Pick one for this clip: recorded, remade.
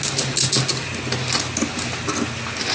recorded